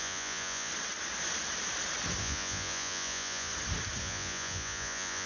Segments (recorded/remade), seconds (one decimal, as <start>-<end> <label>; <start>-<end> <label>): 0.0-0.7 remade; 0.7-2.2 recorded; 2.2-3.5 remade; 3.5-4.0 recorded; 4.0-5.3 remade